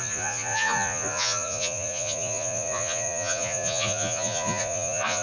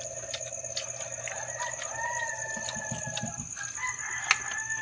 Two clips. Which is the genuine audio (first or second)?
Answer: second